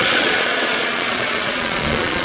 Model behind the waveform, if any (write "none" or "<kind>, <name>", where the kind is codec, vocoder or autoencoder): vocoder, Vocos